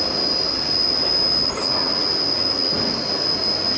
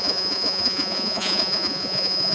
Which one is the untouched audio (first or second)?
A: first